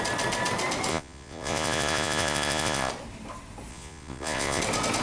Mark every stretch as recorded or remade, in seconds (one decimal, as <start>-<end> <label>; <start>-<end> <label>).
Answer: 0.0-0.9 recorded; 0.9-2.9 remade; 2.9-3.7 recorded; 3.7-4.6 remade; 4.6-5.0 recorded